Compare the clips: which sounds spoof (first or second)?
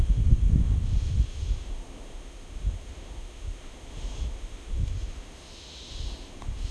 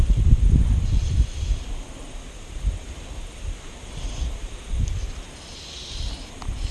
first